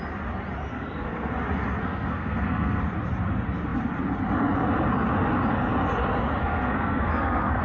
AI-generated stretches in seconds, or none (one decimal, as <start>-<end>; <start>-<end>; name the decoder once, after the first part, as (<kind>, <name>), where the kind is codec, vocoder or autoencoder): 0.7-1.3 (codec, SNAC); 1.8-2.8; 6.4-7.6